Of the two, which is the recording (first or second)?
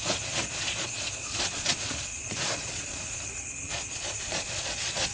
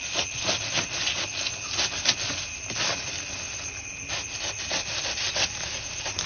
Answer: second